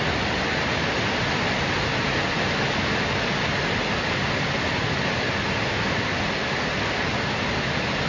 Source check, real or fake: real